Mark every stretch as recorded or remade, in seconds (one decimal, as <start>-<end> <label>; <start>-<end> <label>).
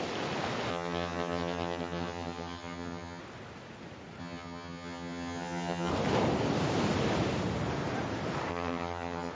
0.0-0.7 recorded; 0.7-3.2 remade; 3.2-4.2 recorded; 4.2-5.9 remade; 5.9-8.5 recorded; 8.5-9.3 remade